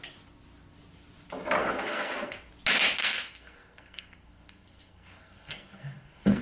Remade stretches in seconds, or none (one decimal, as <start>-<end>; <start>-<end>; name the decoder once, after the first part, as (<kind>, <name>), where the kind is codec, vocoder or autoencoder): 1.6-2.5 (codec, SNAC); 3.0-6.4